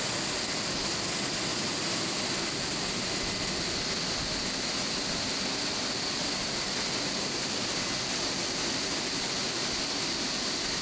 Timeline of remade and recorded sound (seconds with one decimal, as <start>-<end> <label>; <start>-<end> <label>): 0.0-10.8 recorded